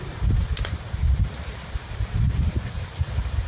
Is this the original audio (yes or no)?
no